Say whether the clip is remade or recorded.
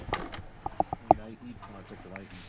recorded